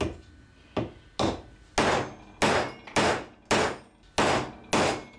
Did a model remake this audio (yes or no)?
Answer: no